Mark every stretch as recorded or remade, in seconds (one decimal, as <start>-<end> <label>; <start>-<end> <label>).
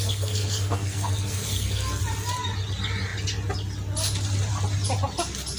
0.0-2.0 remade; 2.0-5.6 recorded